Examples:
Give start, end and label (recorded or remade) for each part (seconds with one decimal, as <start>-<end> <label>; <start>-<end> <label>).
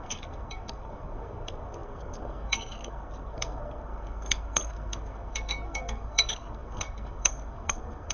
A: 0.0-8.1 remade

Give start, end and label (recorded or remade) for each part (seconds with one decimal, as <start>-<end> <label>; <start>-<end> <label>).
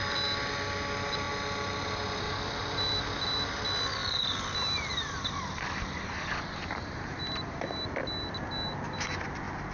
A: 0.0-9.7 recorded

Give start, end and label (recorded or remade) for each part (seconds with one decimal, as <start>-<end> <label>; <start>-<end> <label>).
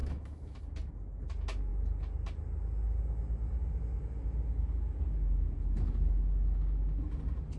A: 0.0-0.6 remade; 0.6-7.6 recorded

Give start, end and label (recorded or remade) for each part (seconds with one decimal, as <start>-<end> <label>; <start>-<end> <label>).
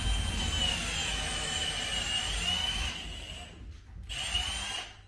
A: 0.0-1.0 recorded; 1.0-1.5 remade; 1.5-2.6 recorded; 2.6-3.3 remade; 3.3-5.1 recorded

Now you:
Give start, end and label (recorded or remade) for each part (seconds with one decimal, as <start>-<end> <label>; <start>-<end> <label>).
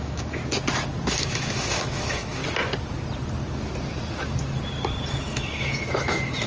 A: 0.0-0.4 remade; 0.4-1.2 recorded; 1.2-2.4 remade; 2.4-5.1 recorded; 5.1-6.5 remade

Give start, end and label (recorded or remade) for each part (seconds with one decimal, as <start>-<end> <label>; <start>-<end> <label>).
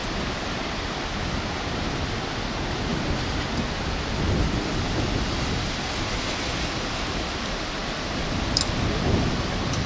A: 0.0-1.1 remade; 1.1-2.9 recorded; 2.9-6.2 remade; 6.2-9.9 recorded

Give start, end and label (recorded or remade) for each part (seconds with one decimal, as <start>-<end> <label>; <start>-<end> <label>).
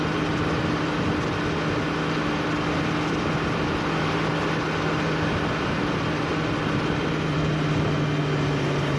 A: 0.0-9.0 recorded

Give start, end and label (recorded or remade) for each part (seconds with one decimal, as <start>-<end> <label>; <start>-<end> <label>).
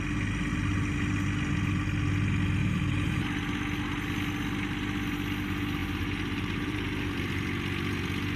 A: 0.0-2.6 recorded; 2.6-3.2 remade; 3.2-5.8 recorded; 5.8-7.4 remade; 7.4-8.4 recorded